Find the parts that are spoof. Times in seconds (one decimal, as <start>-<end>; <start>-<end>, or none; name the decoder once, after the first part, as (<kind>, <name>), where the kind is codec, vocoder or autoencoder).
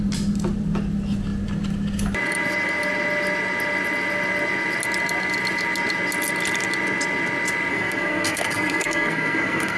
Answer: 7.7-9.8 (codec, SNAC)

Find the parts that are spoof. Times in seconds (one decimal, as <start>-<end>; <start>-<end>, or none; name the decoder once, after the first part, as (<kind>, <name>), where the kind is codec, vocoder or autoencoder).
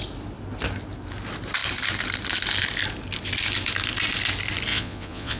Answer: 4.7-5.4 (vocoder, Vocos)